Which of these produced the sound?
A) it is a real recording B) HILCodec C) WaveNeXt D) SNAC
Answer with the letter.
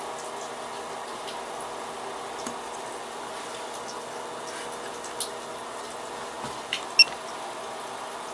A